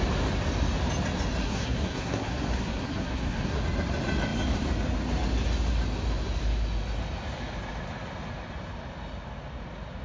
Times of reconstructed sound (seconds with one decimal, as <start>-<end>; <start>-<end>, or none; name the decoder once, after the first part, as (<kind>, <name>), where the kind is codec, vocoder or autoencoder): 1.4-3.6 (codec, SNAC)